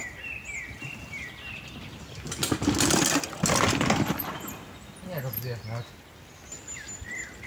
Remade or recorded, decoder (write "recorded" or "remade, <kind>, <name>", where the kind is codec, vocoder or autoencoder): recorded